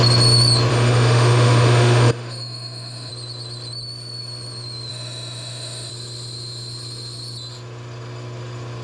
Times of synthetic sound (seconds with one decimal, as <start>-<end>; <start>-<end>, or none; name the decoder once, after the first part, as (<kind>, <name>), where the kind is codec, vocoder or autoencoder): 0.7-3.1 (autoencoder, DAC-VAE); 4.9-5.9